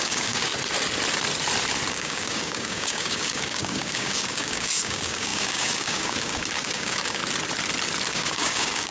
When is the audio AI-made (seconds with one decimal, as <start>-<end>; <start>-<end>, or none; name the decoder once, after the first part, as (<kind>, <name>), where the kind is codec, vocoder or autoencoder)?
0.0-0.5 (codec, DAC); 1.9-7.2; 8.1-8.9